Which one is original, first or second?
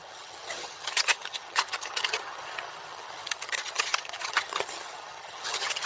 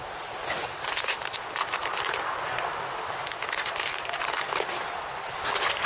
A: second